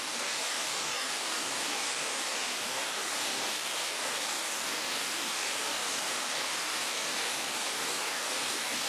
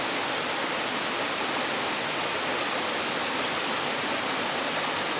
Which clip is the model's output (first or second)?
first